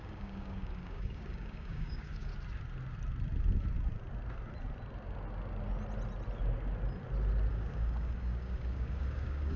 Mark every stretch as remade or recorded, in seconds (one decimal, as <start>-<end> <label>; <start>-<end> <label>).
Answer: 0.0-2.3 remade; 2.3-7.5 recorded; 7.5-9.6 remade